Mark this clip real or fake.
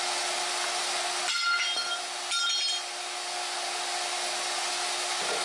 real